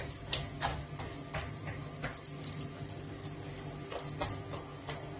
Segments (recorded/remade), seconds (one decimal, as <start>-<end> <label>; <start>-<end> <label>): 0.0-5.2 recorded